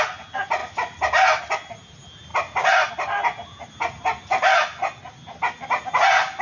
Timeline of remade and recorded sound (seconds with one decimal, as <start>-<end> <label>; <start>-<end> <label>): 0.0-6.4 recorded